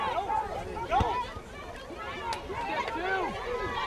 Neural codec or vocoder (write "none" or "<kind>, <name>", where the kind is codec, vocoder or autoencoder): none